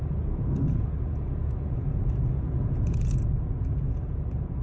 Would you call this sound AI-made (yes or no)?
yes